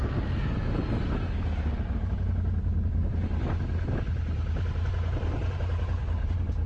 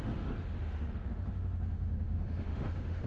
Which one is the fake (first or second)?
second